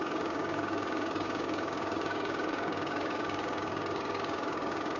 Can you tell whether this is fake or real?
fake